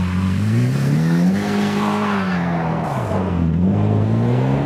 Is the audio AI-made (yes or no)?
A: yes